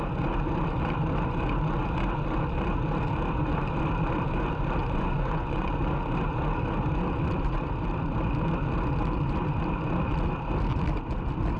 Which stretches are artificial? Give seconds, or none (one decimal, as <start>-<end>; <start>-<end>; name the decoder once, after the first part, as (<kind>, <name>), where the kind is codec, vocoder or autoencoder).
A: 4.8-5.7 (vocoder, Vocos)